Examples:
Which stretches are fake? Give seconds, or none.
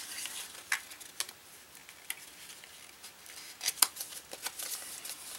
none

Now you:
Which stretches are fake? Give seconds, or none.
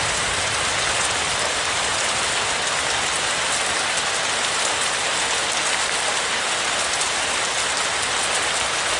none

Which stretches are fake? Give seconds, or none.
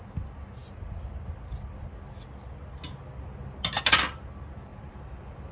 4.7-5.5 (vocoder, BigVGAN v2)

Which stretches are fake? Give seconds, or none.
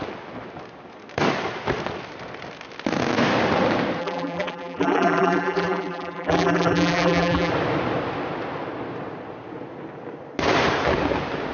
4.0-7.5 (vocoder, BigVGAN v2)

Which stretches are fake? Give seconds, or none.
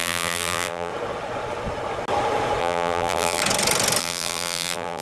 0.0-0.9 (vocoder, BigVGAN v2); 2.6-3.4; 4.0-5.0